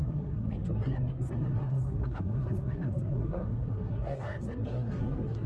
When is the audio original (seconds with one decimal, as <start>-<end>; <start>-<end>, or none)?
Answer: none